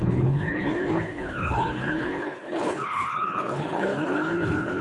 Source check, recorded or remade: remade